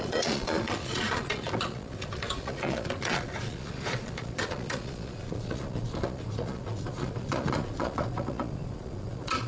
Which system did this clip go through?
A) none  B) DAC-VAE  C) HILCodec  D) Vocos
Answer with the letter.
D